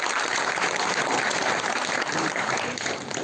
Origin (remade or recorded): remade